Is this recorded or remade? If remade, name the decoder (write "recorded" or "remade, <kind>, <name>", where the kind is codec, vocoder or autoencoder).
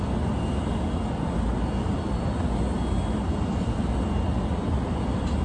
recorded